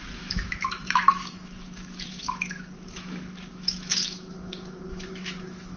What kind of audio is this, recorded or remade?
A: remade